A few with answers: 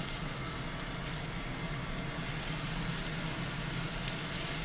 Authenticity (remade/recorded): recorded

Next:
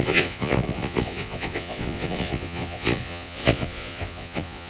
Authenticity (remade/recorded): remade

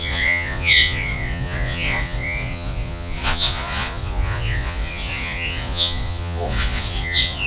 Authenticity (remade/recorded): remade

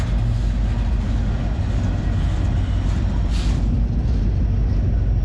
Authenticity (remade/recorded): recorded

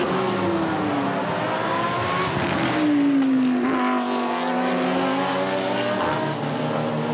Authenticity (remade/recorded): recorded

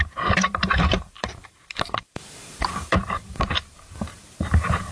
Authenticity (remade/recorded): remade